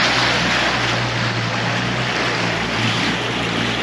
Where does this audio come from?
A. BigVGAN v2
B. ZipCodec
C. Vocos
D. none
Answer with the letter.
D